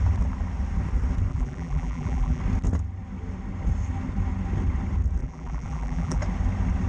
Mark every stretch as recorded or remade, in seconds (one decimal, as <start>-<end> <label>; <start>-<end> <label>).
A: 0.0-1.3 recorded; 1.3-2.4 remade; 2.4-5.2 recorded; 5.2-6.2 remade; 6.2-6.9 recorded